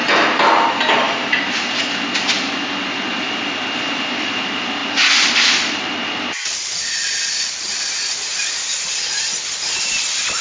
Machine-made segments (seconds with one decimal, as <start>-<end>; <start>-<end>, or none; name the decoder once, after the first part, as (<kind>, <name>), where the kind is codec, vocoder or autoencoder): 1.3-10.4 (vocoder, BigVGAN v2)